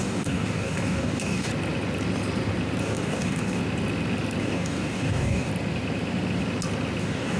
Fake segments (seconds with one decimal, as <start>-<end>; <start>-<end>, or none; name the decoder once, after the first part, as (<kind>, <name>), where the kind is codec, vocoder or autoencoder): 0.0-1.5 (codec, DAC); 2.8-3.6; 4.4-5.5; 7.0-7.4